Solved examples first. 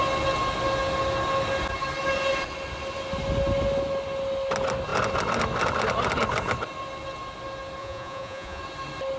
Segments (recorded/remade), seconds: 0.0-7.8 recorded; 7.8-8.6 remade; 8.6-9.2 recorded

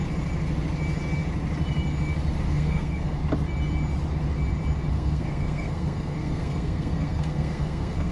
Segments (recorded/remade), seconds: 0.0-2.5 recorded; 2.5-3.2 remade; 3.2-4.9 recorded; 4.9-8.1 remade